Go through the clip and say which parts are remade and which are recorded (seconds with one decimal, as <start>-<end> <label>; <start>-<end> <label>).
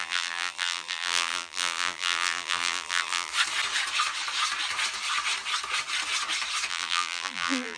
0.0-3.3 remade; 3.3-6.7 recorded; 6.7-7.8 remade